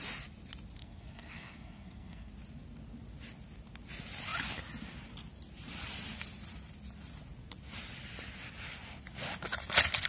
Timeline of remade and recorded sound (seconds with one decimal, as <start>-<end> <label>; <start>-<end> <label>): 0.0-0.8 recorded; 0.8-2.3 remade; 2.3-10.1 recorded